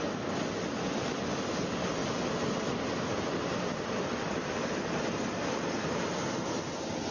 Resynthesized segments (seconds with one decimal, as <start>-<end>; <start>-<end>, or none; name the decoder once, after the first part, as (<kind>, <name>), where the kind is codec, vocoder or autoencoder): 2.0-6.3 (vocoder, BigVGAN v2)